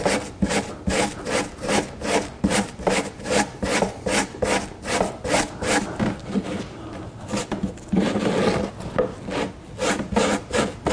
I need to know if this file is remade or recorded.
recorded